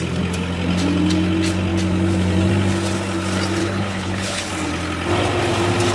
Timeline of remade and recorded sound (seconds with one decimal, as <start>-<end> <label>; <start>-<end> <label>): 0.0-3.6 recorded; 3.6-4.5 remade; 4.5-5.9 recorded